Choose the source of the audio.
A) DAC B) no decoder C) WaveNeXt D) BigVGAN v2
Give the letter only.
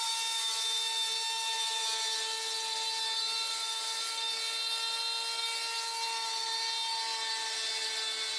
B